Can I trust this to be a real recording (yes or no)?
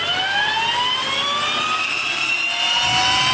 yes